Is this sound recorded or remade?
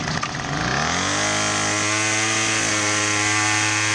recorded